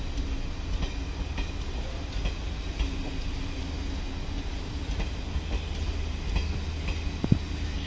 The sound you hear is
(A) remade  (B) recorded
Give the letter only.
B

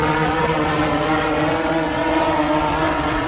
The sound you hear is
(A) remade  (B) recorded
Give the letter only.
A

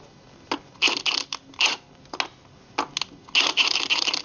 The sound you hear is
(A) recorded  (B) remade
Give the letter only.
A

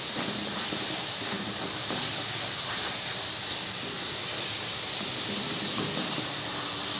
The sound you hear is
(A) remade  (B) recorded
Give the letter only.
B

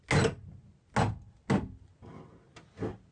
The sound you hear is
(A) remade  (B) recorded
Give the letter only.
B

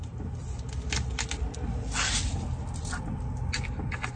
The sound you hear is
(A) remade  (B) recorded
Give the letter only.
B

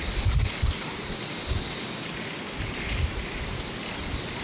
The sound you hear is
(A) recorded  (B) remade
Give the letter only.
A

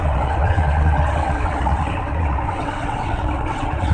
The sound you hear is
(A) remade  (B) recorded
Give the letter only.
A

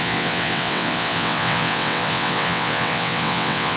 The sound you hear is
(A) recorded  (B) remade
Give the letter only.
B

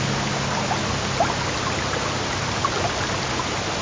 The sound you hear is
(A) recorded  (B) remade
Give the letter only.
A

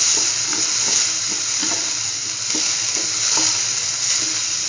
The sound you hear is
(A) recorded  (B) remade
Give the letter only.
A